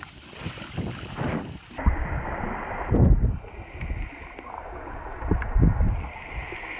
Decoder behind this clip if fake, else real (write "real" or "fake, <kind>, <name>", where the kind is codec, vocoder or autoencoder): real